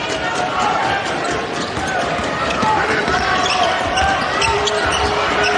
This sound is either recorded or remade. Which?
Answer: recorded